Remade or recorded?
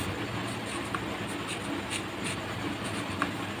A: recorded